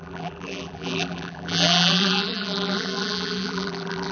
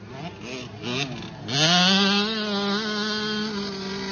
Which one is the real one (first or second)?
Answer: second